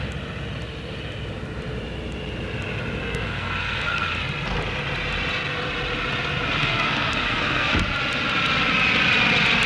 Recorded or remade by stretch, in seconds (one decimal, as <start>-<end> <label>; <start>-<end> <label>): 0.0-3.0 recorded; 3.0-4.2 remade; 4.2-6.6 recorded; 6.6-7.7 remade; 7.7-9.7 recorded